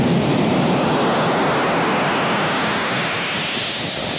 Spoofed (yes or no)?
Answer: no